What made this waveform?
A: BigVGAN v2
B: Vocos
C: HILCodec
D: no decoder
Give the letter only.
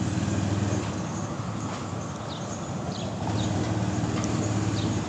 D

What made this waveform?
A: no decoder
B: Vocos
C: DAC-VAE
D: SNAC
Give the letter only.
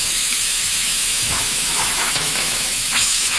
C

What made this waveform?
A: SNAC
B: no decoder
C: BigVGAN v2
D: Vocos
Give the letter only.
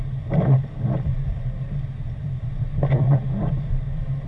C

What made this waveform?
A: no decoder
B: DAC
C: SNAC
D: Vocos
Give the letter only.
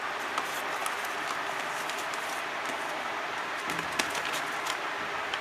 A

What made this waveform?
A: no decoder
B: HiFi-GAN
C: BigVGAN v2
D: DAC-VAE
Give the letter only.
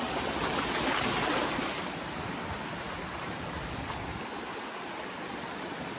A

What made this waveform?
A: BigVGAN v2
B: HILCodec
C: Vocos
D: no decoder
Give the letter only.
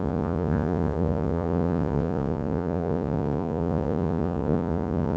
C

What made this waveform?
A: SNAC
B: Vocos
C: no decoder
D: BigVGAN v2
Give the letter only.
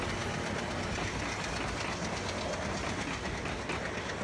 C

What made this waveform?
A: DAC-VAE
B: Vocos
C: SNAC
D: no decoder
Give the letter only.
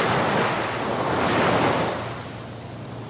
D